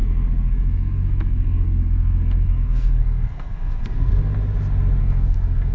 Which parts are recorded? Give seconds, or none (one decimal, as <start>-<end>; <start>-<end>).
4.1-5.0